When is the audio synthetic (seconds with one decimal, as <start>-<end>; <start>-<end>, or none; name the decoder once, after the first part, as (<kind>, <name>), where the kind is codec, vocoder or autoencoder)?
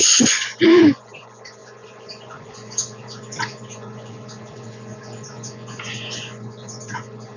0.0-7.4 (vocoder, Vocos)